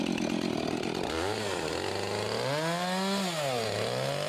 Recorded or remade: recorded